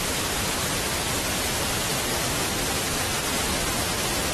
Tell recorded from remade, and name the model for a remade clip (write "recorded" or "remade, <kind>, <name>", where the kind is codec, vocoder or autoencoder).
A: remade, vocoder, BigVGAN v2